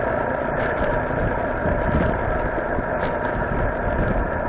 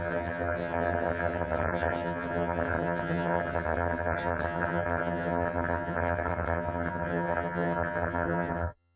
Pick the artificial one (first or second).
second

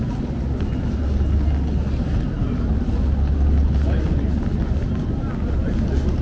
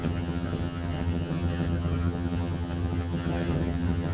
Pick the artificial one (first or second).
second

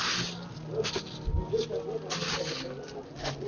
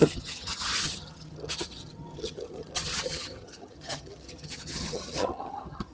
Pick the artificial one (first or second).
second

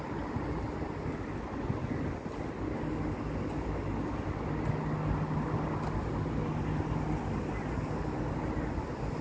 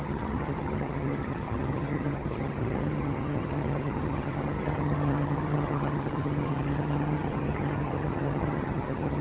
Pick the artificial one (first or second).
second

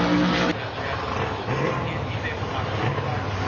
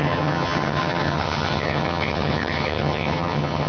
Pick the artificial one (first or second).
second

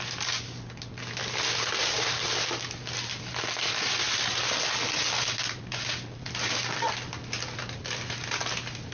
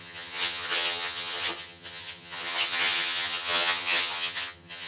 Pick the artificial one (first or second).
second